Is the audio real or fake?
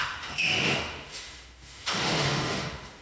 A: fake